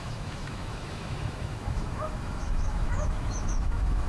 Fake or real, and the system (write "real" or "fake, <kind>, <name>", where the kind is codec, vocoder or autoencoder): fake, autoencoder, DAC-VAE